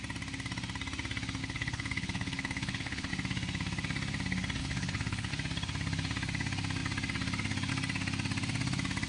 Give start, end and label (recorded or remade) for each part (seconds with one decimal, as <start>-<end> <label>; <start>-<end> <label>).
0.0-1.4 recorded; 1.4-3.1 remade; 3.1-4.6 recorded; 4.6-5.3 remade; 5.3-9.1 recorded